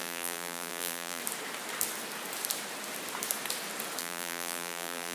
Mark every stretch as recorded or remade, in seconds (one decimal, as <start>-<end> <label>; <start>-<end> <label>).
0.0-1.2 remade; 1.2-4.0 recorded; 4.0-5.1 remade